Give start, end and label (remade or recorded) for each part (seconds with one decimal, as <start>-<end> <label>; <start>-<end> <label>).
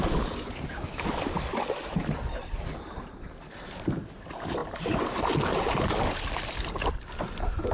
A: 0.0-7.7 recorded